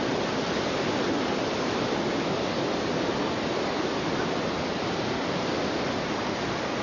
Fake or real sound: real